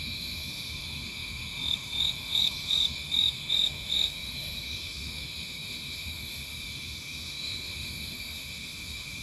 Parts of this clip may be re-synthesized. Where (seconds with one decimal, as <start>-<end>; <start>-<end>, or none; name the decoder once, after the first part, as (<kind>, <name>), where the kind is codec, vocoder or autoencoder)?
0.0-9.2 (autoencoder, DAC-VAE)